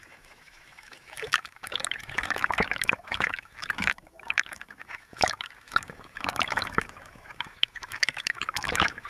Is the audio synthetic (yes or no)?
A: yes